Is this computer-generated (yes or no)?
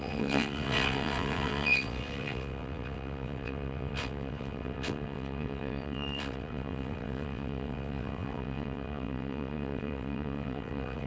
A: yes